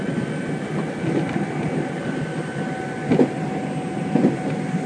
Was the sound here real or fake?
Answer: real